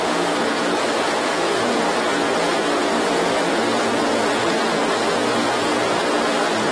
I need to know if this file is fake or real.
fake